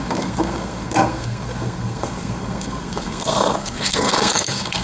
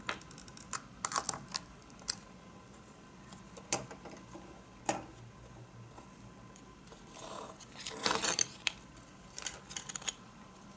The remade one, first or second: first